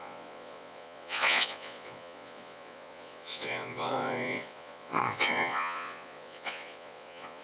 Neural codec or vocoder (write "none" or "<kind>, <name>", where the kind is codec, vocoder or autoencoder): vocoder, Vocos